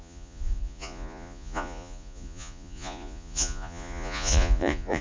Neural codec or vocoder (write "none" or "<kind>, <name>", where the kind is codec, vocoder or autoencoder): vocoder, Vocos